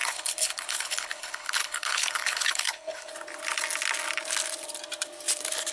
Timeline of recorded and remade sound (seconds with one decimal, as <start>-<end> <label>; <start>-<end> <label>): 0.0-3.1 remade; 3.1-5.7 recorded